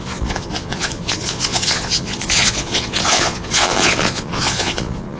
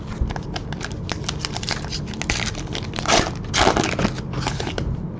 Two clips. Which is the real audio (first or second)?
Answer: second